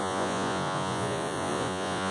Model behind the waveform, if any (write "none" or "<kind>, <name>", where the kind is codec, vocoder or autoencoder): vocoder, Vocos